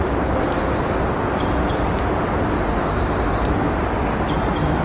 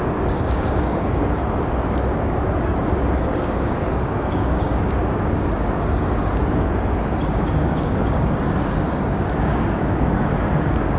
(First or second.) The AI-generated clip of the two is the second